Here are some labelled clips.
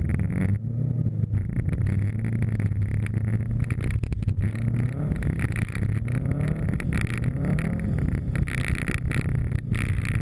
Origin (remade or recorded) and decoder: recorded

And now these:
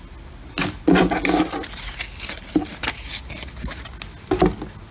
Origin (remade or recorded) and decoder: recorded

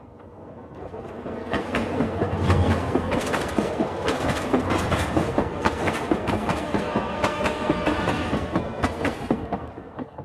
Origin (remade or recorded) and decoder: remade, codec, SNAC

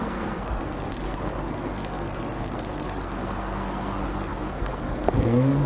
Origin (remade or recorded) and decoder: remade, codec, SNAC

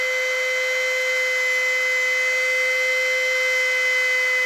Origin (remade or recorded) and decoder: recorded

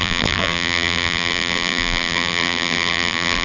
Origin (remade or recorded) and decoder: remade, vocoder, BigVGAN v2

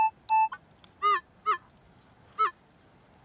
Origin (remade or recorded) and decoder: recorded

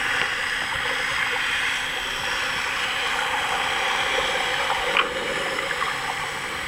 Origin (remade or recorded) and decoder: recorded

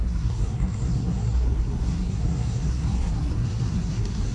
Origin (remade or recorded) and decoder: remade, codec, SNAC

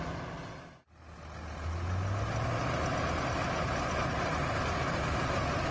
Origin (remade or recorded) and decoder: recorded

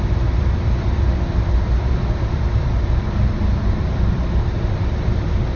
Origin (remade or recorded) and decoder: remade, vocoder, BigVGAN v2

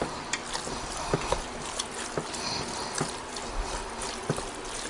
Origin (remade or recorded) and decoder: recorded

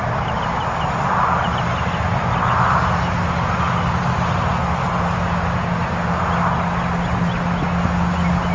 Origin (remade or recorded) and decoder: recorded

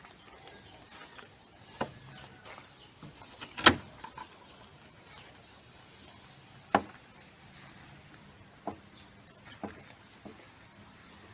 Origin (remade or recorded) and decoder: recorded